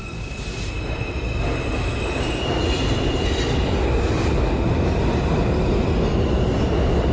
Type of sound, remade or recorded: recorded